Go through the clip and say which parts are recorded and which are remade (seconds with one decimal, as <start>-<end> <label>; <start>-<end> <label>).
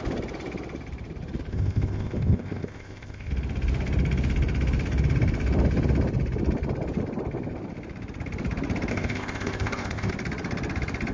0.0-1.5 recorded; 1.5-3.3 remade; 3.3-8.9 recorded; 8.9-10.1 remade; 10.1-11.1 recorded